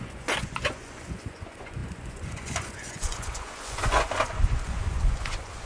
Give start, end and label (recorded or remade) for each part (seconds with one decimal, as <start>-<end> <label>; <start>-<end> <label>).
0.0-5.7 remade